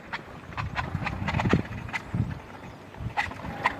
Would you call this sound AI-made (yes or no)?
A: no